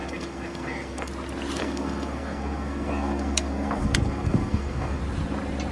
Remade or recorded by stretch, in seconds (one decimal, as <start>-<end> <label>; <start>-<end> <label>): 0.0-1.1 remade; 1.1-1.6 recorded; 1.6-5.0 remade; 5.0-5.7 recorded